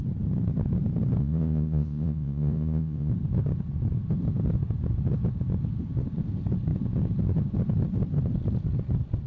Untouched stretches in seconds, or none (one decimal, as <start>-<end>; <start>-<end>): 0.0-1.2; 3.1-9.3